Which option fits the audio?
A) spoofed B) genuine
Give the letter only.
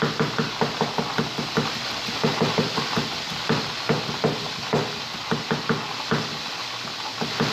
B